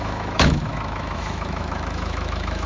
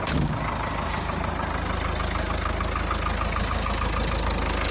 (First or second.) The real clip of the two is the second